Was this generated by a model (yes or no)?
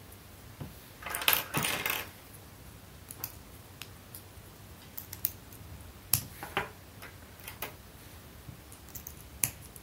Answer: no